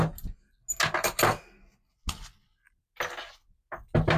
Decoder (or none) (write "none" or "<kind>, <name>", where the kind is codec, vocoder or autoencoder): none